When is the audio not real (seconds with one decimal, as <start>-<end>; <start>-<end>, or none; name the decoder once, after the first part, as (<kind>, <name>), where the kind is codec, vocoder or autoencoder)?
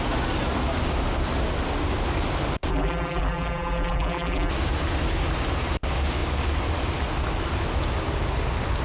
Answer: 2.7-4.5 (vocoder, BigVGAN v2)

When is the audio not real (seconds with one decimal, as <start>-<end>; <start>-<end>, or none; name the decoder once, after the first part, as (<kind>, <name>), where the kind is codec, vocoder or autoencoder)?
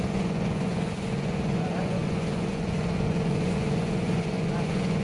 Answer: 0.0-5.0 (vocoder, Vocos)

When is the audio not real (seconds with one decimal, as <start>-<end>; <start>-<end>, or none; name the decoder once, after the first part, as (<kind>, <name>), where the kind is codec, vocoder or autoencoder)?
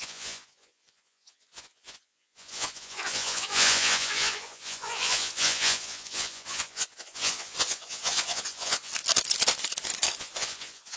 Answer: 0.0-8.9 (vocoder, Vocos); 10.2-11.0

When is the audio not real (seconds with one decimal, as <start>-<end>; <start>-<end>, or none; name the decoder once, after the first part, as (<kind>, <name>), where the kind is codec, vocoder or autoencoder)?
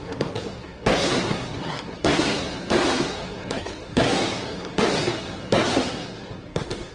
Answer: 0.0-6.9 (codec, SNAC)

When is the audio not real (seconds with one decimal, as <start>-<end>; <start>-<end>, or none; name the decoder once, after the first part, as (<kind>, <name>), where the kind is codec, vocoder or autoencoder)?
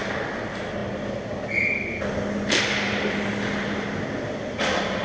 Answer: none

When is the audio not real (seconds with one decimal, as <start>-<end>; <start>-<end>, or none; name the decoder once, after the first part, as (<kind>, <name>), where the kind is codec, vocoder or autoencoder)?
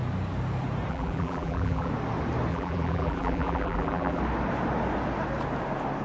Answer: 0.9-1.9 (vocoder, BigVGAN v2); 2.5-4.2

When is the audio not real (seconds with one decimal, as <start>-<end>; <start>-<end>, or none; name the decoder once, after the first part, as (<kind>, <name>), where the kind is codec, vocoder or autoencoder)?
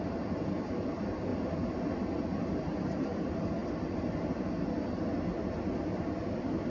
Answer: 0.0-1.3 (vocoder, BigVGAN v2); 2.2-3.6